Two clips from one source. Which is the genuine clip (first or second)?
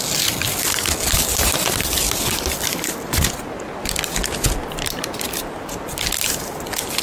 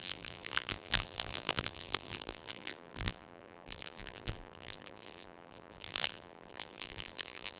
first